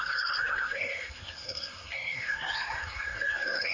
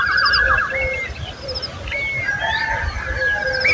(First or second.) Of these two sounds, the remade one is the first